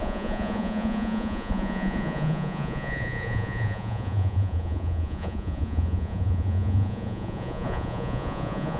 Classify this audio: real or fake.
fake